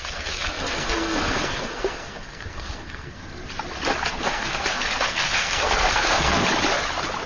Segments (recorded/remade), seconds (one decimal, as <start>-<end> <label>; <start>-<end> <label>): 0.0-3.2 remade; 3.2-4.1 recorded; 4.1-6.4 remade; 6.4-7.3 recorded

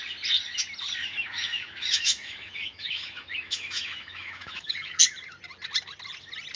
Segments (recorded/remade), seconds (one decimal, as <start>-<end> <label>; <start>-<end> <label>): 0.0-1.0 recorded; 1.0-5.0 remade; 5.0-6.6 recorded

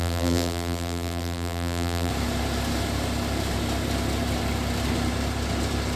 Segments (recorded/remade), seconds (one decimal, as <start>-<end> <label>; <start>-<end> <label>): 0.0-2.1 remade; 2.1-6.0 recorded

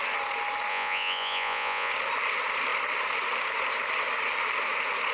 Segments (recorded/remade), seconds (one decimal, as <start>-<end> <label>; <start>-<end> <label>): 0.0-0.7 recorded; 0.7-1.9 remade; 1.9-5.1 recorded

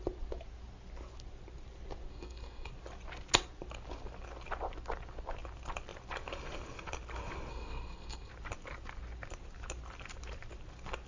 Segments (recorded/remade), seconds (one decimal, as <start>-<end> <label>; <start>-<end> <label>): 0.0-2.1 recorded; 2.1-2.7 remade; 2.7-7.5 recorded; 7.5-8.3 remade; 8.3-11.1 recorded

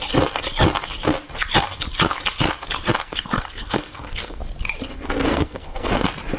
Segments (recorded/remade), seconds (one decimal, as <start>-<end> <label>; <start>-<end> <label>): 0.0-3.0 recorded; 3.0-4.4 remade; 4.4-5.3 recorded; 5.3-5.9 remade; 5.9-6.4 recorded

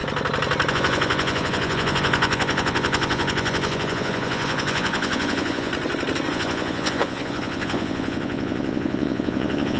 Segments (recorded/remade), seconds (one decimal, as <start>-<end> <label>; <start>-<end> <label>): 0.0-0.7 recorded; 0.7-5.7 remade; 5.7-6.3 recorded; 6.3-9.8 remade

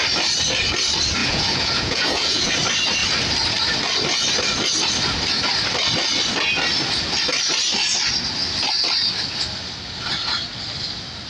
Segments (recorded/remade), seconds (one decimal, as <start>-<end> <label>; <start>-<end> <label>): 0.0-1.2 recorded; 1.2-2.5 remade; 2.5-11.3 recorded